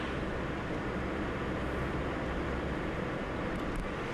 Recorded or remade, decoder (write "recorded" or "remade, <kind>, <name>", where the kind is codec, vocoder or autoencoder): remade, vocoder, BigVGAN v2